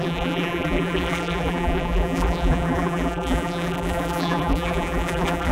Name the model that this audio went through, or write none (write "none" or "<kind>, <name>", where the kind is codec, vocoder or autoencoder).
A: vocoder, BigVGAN v2